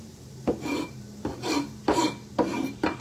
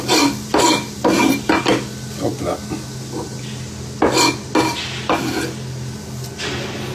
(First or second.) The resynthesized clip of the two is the first